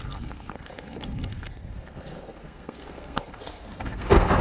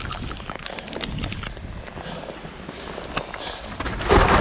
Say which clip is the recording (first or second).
second